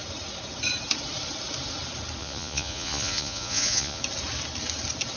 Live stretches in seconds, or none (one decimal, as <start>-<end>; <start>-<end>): 0.0-2.2; 4.0-5.2